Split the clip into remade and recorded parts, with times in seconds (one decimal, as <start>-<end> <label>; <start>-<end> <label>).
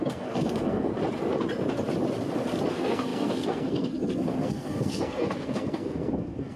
0.0-0.9 remade; 0.9-2.7 recorded; 2.7-6.6 remade